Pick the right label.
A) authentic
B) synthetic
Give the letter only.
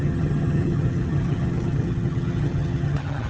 B